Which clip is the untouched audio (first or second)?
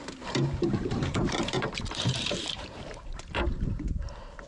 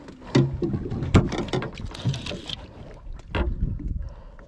second